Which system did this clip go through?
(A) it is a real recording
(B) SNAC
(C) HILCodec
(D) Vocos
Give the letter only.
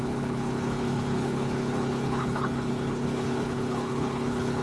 C